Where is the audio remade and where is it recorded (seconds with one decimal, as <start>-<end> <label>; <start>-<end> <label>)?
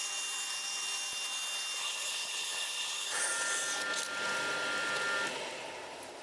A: 0.0-1.8 recorded; 1.8-3.3 remade; 3.3-6.2 recorded